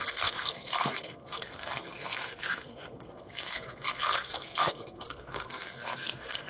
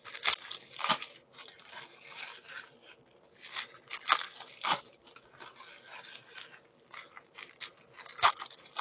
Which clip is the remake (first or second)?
first